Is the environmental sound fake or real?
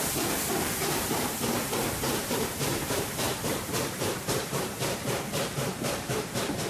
fake